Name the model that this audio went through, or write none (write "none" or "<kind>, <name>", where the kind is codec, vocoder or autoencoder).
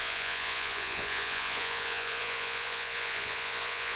vocoder, Vocos